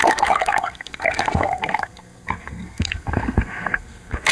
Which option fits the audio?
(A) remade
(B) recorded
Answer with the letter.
A